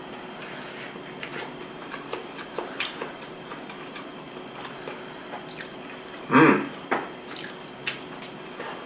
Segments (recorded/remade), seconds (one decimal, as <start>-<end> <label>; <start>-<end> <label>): 0.0-1.3 recorded; 1.3-4.3 remade; 4.3-8.9 recorded